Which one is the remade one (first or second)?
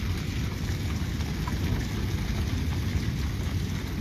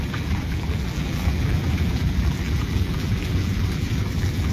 second